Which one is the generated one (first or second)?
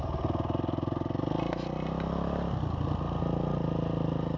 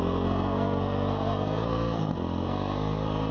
second